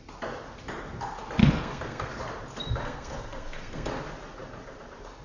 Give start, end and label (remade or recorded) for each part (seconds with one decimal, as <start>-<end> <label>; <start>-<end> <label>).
0.0-1.4 recorded; 1.4-2.2 remade; 2.2-2.8 recorded; 2.8-4.0 remade; 4.0-5.2 recorded